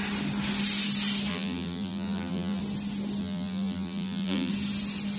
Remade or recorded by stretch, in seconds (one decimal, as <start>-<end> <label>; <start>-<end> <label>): 0.0-1.3 recorded; 1.3-2.6 remade; 2.6-3.2 recorded; 3.2-4.5 remade; 4.5-5.2 recorded

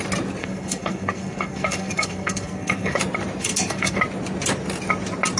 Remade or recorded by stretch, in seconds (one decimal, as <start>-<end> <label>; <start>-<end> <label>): 0.0-0.4 recorded; 0.4-3.0 remade; 3.0-3.4 recorded; 3.4-4.0 remade; 4.0-5.4 recorded

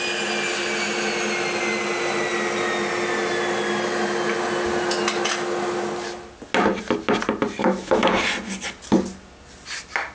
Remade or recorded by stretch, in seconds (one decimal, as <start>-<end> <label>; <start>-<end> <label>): 0.0-7.6 recorded; 7.6-8.1 remade; 8.1-10.1 recorded

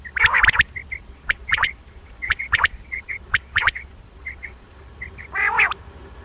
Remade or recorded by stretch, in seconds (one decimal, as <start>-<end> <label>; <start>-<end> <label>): 0.0-1.0 recorded; 1.0-4.7 remade; 4.7-6.2 recorded

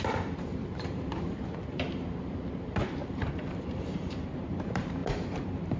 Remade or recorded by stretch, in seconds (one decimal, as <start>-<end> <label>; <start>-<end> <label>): 0.0-5.8 remade

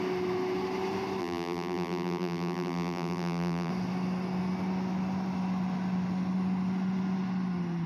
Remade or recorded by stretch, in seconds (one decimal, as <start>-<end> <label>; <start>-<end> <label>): 0.0-1.2 recorded; 1.2-3.7 remade; 3.7-7.9 recorded